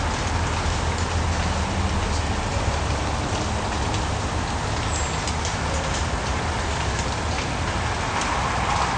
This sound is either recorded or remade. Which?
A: recorded